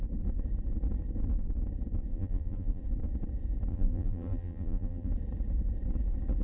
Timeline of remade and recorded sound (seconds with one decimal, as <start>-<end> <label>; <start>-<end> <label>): 0.0-2.1 recorded; 2.1-2.8 remade; 2.8-3.7 recorded; 3.7-5.1 remade; 5.1-6.4 recorded